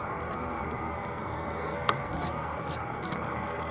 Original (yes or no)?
no